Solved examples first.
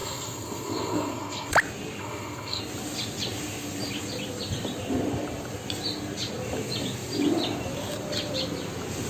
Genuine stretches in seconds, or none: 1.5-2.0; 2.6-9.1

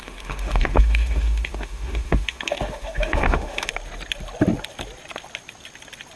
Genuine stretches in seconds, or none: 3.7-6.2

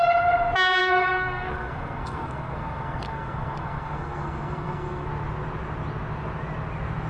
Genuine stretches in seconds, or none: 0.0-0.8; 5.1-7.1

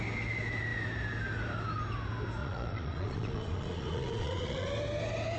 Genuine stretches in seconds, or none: 0.0-2.4; 4.7-5.4

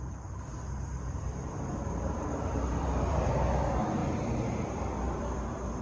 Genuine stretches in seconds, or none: 0.0-0.5; 3.3-4.0; 4.9-5.8